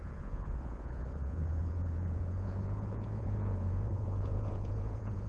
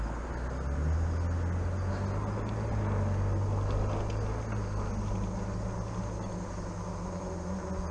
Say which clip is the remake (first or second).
first